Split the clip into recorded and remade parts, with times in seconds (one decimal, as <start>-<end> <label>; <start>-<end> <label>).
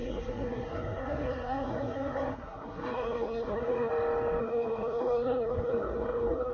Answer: 0.0-3.9 remade; 3.9-4.4 recorded; 4.4-6.5 remade